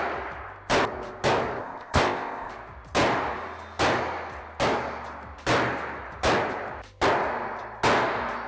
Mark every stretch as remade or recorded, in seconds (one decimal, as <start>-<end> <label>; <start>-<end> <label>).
0.0-1.6 recorded; 1.6-2.5 remade; 2.5-8.5 recorded